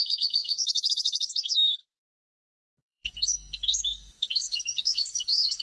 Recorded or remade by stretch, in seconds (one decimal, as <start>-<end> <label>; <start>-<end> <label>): 0.0-5.6 remade